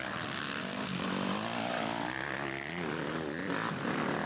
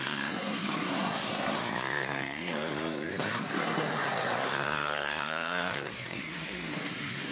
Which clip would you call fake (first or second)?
second